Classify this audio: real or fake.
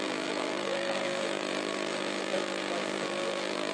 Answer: fake